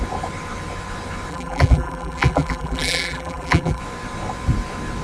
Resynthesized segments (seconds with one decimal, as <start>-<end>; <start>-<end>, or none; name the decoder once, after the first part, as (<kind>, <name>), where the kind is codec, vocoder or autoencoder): 1.3-3.8 (vocoder, BigVGAN v2)